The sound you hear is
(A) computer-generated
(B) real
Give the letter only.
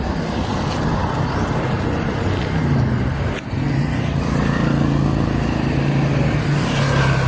B